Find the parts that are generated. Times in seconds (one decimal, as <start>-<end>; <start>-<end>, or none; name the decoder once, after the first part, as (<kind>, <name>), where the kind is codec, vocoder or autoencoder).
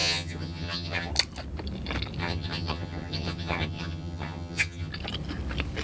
0.0-1.1 (vocoder, HiFi-GAN); 2.2-4.9